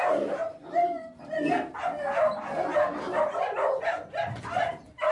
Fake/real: real